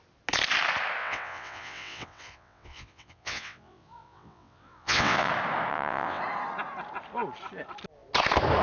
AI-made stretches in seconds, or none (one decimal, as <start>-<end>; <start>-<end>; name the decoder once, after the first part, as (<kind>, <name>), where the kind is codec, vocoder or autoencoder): 1.0-5.3 (vocoder, WaveNeXt); 5.7-6.2